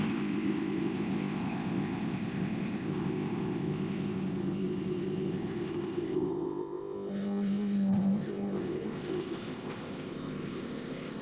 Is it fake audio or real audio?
fake